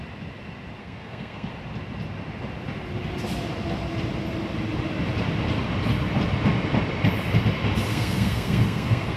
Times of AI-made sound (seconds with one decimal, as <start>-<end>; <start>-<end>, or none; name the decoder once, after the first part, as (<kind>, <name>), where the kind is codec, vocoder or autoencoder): 0.8-1.5 (codec, SNAC); 7.9-9.2